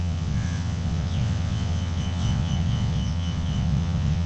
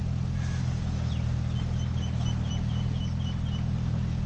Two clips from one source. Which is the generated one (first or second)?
first